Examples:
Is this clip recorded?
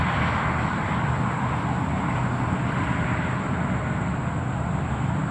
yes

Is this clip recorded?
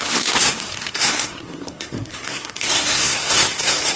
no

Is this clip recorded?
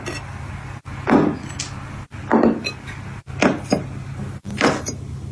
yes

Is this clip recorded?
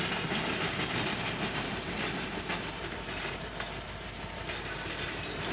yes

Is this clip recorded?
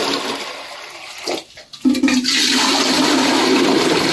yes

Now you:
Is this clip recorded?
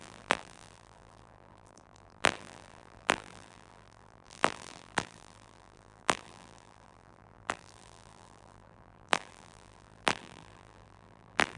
no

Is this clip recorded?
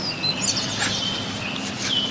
yes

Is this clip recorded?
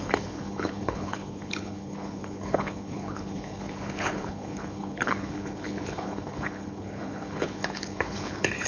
no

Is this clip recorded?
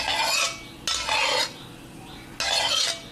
yes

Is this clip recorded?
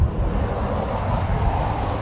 yes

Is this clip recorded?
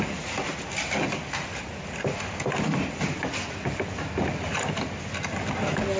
yes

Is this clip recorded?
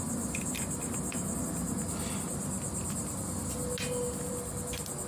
yes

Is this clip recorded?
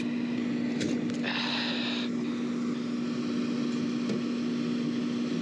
yes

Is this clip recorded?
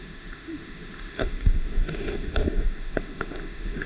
no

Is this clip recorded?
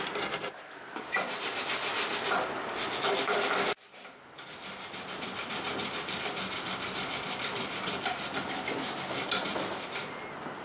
yes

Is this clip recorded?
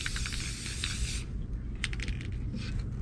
yes